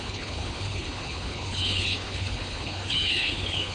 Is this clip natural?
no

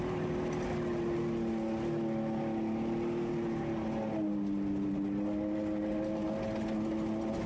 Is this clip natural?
yes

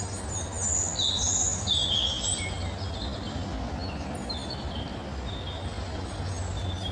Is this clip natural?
yes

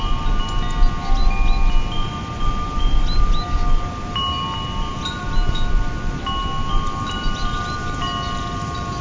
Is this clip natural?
yes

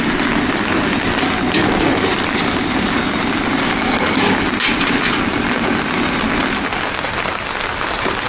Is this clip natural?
yes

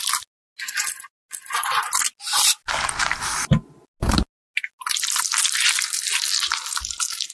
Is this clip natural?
yes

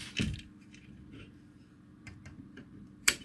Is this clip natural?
no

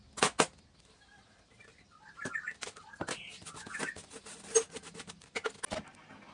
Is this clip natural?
yes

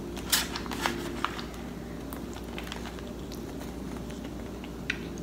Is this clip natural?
yes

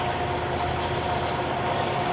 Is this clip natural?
yes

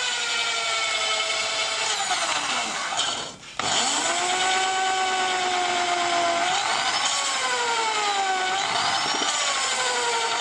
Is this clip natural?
yes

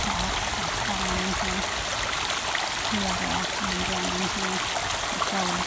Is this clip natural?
yes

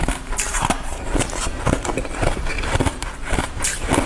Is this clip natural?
no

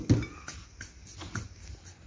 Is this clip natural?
yes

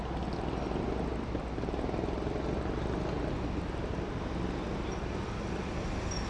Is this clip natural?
yes